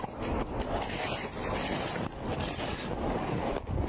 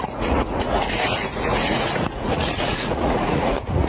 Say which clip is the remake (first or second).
second